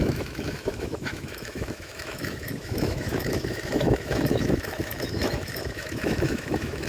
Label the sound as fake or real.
fake